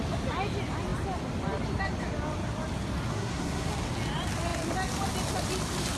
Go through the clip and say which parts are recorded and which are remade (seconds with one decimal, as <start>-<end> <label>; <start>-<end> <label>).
0.0-3.1 recorded; 3.1-3.7 remade; 3.7-6.0 recorded